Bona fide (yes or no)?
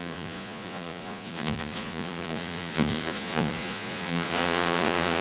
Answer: no